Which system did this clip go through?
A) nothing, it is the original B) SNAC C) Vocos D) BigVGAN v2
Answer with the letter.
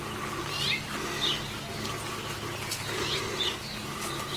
A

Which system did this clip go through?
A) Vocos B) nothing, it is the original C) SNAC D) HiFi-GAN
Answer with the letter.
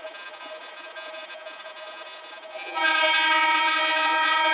A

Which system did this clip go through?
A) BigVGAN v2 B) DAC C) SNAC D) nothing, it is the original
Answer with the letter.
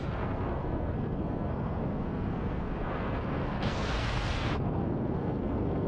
C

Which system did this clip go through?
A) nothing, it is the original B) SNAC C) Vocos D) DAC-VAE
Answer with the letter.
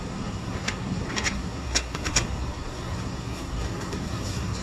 B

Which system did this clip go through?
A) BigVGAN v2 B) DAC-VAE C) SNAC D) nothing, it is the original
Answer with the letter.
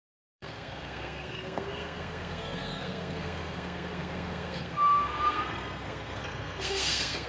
C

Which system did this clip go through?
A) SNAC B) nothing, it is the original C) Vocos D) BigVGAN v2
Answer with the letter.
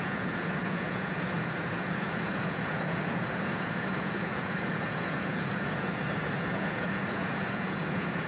C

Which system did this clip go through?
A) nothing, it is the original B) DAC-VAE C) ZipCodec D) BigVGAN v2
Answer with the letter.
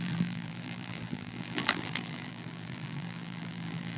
D